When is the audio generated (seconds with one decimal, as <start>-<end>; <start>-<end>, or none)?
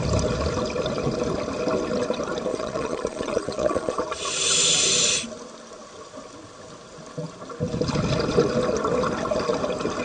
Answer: 2.5-4.0